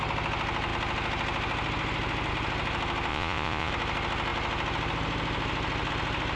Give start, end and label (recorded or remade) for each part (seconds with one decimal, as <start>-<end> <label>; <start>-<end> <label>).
0.0-3.1 recorded; 3.1-3.7 remade; 3.7-6.4 recorded